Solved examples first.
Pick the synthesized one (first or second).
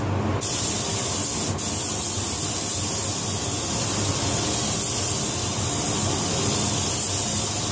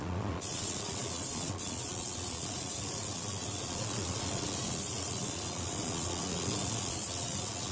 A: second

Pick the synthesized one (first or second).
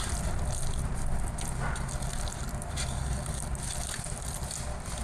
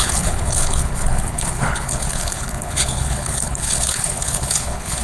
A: second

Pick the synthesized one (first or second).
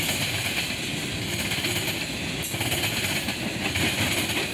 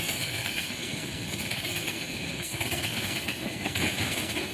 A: second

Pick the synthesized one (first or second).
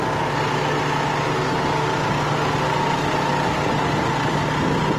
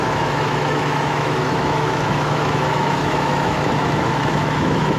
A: second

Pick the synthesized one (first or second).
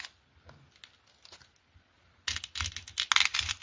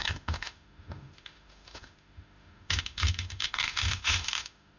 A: second